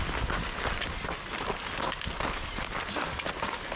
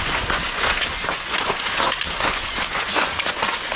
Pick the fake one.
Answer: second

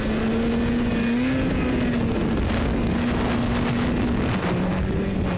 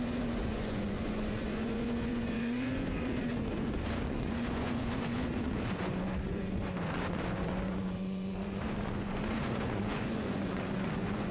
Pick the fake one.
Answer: second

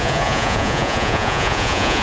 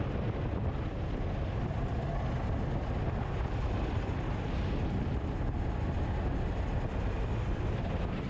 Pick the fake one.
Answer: first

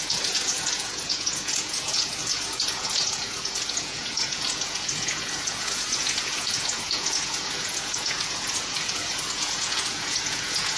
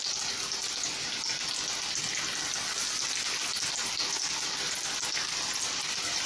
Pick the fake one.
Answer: first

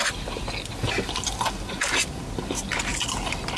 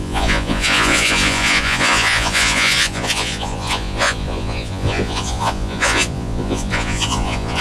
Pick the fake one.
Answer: second